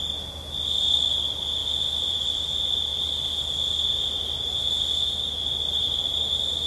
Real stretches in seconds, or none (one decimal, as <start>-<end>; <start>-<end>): 1.6-2.1; 2.9-4.8